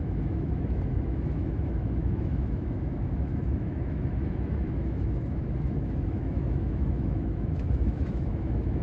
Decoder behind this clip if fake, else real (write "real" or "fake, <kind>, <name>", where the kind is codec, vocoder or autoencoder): fake, autoencoder, DAC-VAE